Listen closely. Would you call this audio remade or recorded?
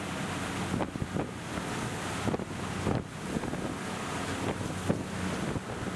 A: recorded